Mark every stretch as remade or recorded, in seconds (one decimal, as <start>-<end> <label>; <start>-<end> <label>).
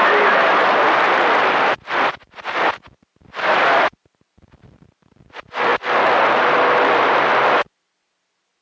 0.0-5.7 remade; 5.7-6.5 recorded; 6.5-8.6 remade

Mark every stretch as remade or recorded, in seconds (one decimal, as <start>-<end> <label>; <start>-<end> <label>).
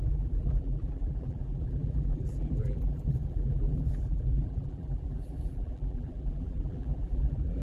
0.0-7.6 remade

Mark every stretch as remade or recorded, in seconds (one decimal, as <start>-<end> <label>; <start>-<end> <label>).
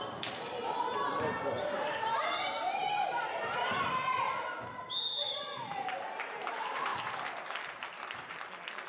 0.0-8.9 remade